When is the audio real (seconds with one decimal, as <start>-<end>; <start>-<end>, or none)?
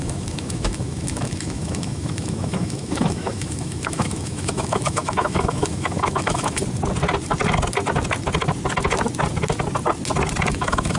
6.6-10.5